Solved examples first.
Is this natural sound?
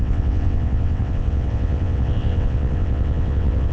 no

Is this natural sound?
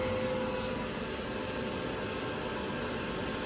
yes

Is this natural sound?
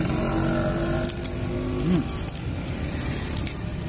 yes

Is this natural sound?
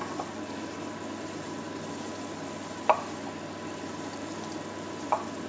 yes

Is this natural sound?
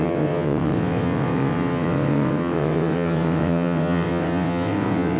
no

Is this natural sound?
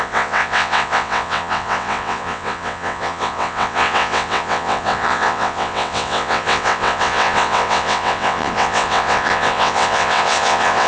no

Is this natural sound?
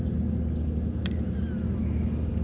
yes